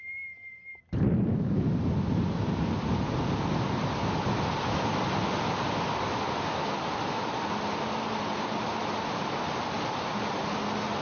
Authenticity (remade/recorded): recorded